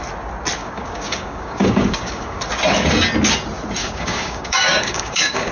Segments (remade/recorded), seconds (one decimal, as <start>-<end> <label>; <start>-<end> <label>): 0.0-0.6 recorded; 0.6-2.4 remade; 2.4-3.8 recorded; 3.8-5.5 remade